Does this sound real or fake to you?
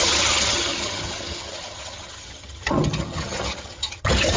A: fake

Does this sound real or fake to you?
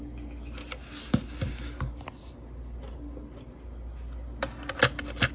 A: real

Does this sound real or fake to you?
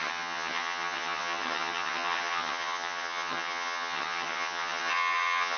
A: fake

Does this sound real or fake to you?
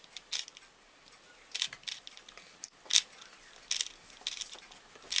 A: real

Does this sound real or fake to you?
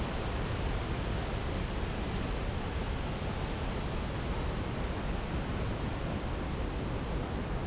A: real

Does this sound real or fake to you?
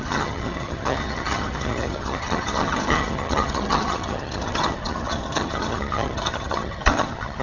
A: fake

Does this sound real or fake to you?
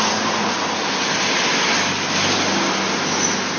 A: real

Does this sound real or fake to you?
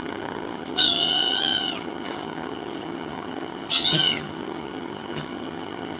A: fake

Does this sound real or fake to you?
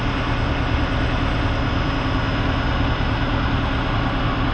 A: real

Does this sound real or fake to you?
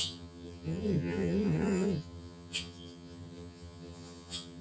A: fake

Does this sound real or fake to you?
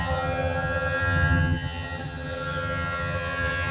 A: fake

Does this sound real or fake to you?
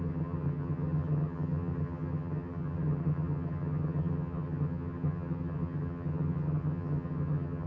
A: fake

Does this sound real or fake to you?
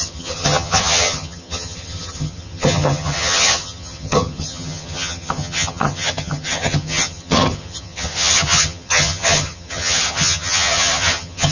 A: fake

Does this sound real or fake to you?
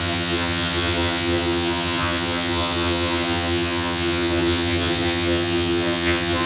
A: fake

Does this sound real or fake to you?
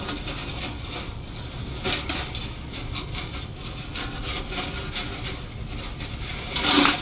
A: real